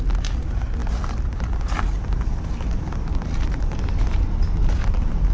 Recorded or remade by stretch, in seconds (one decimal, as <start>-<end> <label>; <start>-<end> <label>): 0.0-5.3 recorded